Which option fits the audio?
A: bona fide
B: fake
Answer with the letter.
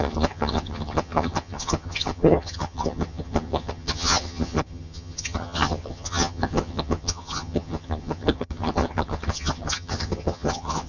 B